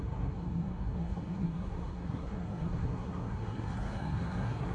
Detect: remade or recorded remade